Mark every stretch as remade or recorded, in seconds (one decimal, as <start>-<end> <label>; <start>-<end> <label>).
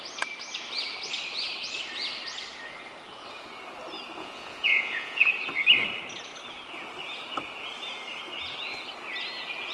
0.0-4.2 recorded; 4.2-5.3 remade; 5.3-9.7 recorded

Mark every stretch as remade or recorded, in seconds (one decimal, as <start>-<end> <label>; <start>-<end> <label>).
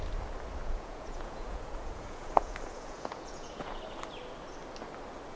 0.0-0.6 recorded; 0.6-3.8 remade; 3.8-5.4 recorded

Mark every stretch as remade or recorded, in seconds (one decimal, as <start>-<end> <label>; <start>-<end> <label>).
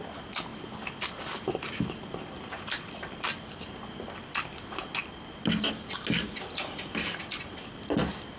0.0-8.4 recorded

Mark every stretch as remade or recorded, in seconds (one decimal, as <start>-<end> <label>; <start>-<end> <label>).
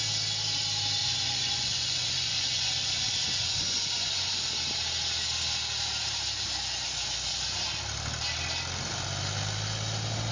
0.0-1.0 recorded; 1.0-4.4 remade; 4.4-10.3 recorded